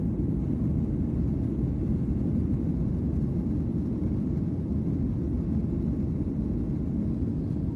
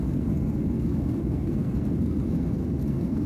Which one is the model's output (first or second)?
second